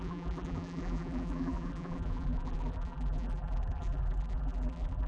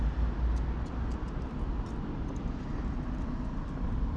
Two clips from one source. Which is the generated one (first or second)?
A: first